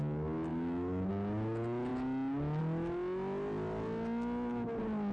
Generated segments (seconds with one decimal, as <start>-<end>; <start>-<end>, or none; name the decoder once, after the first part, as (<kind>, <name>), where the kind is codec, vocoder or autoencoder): 0.5-1.1 (autoencoder, DAC-VAE)